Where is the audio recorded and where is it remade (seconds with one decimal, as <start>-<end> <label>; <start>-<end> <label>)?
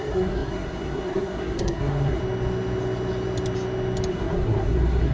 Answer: 0.0-2.2 remade; 2.2-4.1 recorded; 4.1-5.1 remade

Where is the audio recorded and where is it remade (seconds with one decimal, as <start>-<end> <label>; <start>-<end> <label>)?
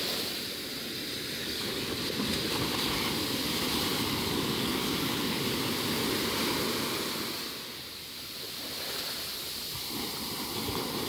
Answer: 0.0-1.4 recorded; 1.4-2.0 remade; 2.0-3.9 recorded; 3.9-5.4 remade; 5.4-11.1 recorded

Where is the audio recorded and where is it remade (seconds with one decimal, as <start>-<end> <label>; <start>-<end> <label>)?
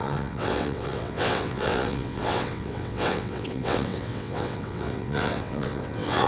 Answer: 0.0-6.3 remade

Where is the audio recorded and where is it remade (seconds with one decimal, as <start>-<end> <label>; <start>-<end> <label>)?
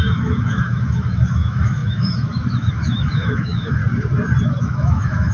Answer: 0.0-3.8 remade; 3.8-4.4 recorded; 4.4-5.3 remade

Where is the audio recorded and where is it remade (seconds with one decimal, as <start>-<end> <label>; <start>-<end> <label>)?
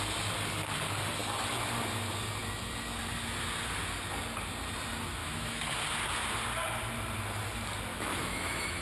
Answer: 0.0-5.2 recorded; 5.2-5.7 remade; 5.7-7.9 recorded; 7.9-8.8 remade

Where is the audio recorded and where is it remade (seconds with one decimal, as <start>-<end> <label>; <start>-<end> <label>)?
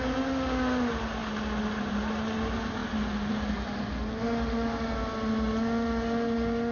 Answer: 0.0-6.7 recorded